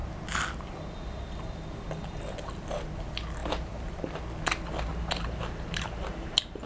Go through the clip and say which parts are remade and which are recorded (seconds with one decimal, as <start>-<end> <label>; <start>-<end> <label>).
0.0-3.4 recorded; 3.4-4.2 remade; 4.2-4.9 recorded; 4.9-6.7 remade